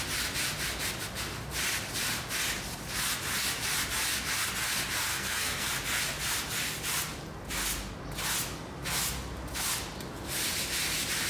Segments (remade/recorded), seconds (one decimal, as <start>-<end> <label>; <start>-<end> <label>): 0.0-5.1 recorded; 5.1-5.7 remade; 5.7-11.3 recorded